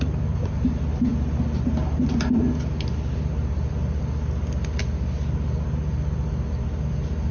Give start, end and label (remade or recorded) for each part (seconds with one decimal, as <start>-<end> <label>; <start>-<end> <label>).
0.0-7.3 recorded